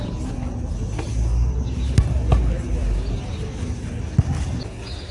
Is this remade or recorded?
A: recorded